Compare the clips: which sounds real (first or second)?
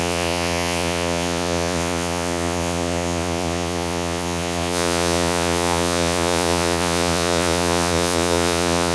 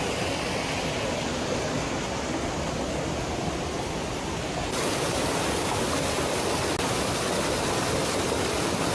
second